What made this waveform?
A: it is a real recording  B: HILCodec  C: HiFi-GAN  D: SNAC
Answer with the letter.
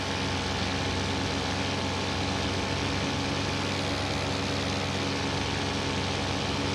A